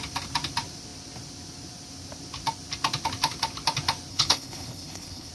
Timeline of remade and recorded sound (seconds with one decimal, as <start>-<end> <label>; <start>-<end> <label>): 0.0-4.1 recorded; 4.1-5.3 remade